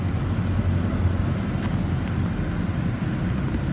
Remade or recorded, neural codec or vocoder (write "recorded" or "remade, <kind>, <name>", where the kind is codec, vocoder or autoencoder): recorded